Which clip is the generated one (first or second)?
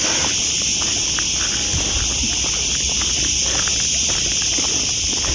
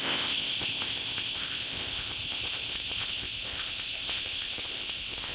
second